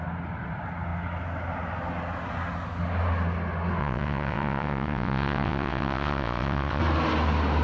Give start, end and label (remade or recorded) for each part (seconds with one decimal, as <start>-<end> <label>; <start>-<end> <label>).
0.0-3.8 recorded; 3.8-6.8 remade; 6.8-7.6 recorded